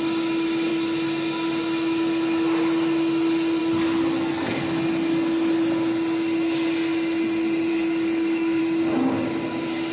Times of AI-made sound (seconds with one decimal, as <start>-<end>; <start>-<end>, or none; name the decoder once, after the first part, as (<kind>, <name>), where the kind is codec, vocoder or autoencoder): 7.7-8.6 (codec, DAC)